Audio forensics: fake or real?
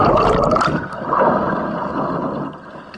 real